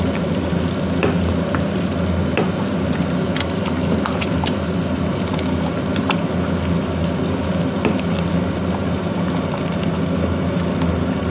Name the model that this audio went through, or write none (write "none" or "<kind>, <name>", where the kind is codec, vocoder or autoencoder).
none